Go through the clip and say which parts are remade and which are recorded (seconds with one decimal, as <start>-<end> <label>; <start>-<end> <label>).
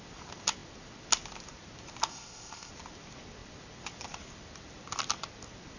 0.0-2.1 recorded; 2.1-2.7 remade; 2.7-5.8 recorded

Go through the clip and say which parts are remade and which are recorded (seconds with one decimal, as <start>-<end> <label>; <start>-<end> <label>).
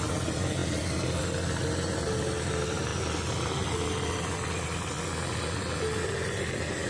0.0-6.9 recorded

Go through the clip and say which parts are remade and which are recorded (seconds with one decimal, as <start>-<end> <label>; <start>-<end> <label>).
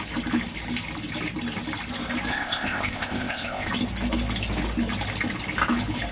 0.0-2.3 recorded; 2.3-3.7 remade; 3.7-6.1 recorded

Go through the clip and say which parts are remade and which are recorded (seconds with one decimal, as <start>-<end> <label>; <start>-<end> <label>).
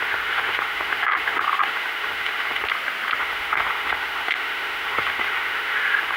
0.0-2.6 remade; 2.6-3.2 recorded; 3.2-6.2 remade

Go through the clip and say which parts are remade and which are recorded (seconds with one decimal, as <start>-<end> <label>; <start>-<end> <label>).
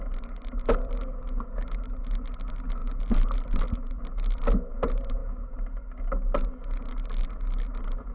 0.0-8.1 recorded